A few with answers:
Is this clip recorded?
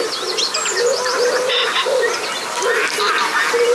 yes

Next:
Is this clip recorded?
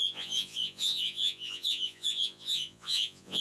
no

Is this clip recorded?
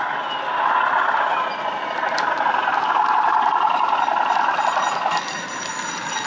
yes